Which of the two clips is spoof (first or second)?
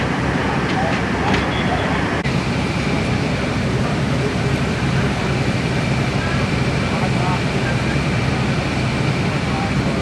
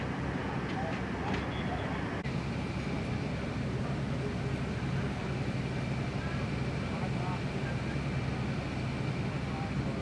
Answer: first